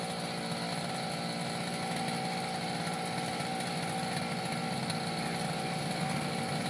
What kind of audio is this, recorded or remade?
recorded